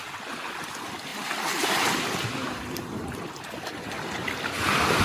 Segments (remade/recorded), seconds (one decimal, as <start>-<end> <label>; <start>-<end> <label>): 0.0-5.0 recorded